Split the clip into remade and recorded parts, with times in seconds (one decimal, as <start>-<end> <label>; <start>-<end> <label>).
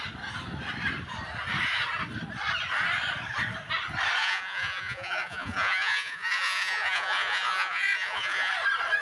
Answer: 0.0-4.2 recorded; 4.2-8.5 remade; 8.5-9.0 recorded